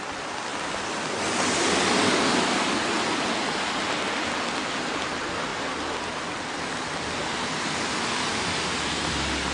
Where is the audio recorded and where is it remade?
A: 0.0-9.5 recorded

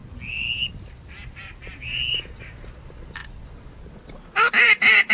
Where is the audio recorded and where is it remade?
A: 0.0-2.1 recorded; 2.1-3.2 remade; 3.2-4.5 recorded; 4.5-5.1 remade

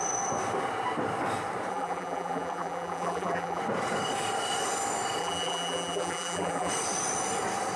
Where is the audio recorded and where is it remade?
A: 0.0-1.7 recorded; 1.7-3.6 remade; 3.6-5.2 recorded; 5.2-6.7 remade; 6.7-7.8 recorded

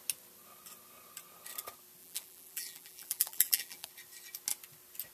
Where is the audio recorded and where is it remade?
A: 0.0-2.0 recorded; 2.0-3.9 remade; 3.9-5.1 recorded

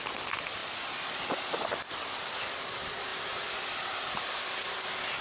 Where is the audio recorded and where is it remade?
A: 0.0-0.6 recorded; 0.6-1.9 remade; 1.9-5.2 recorded

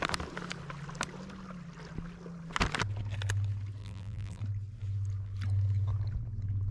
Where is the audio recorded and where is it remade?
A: 0.0-3.8 recorded; 3.8-4.4 remade; 4.4-6.7 recorded

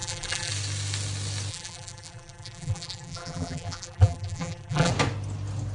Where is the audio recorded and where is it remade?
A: 0.0-0.5 remade; 0.5-1.5 recorded; 1.5-4.9 remade; 4.9-5.7 recorded

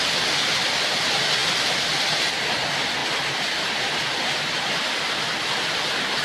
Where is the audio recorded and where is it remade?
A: 0.0-3.0 recorded; 3.0-5.2 remade; 5.2-6.2 recorded